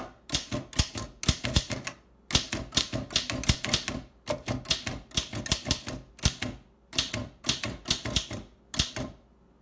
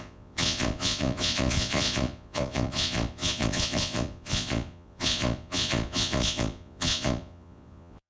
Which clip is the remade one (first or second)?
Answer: second